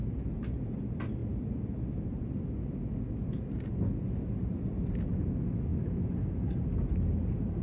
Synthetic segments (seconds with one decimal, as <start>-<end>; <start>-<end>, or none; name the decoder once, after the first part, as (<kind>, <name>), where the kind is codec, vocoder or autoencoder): none